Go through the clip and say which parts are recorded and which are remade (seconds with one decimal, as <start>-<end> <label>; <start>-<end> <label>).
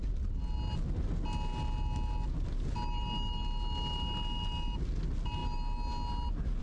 0.0-6.6 recorded